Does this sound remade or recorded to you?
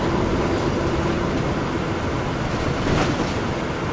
recorded